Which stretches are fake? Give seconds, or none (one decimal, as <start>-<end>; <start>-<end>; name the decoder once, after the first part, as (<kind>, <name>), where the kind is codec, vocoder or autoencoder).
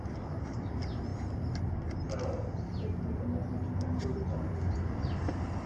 none